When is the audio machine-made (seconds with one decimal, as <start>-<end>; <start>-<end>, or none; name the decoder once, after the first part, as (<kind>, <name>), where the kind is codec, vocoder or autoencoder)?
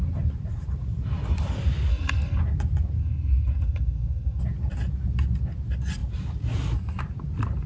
1.9-2.4 (codec, SNAC); 3.0-4.4